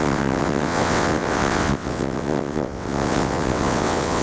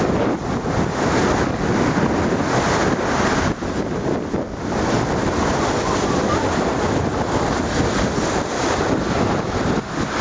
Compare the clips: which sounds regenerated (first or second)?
first